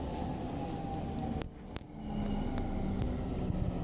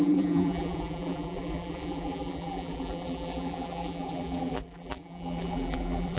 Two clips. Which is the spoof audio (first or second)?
second